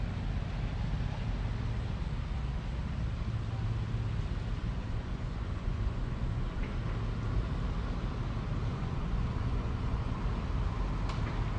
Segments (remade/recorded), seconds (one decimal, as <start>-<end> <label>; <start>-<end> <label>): 0.0-4.6 recorded; 4.6-6.8 remade; 6.8-8.7 recorded; 8.7-10.2 remade; 10.2-11.6 recorded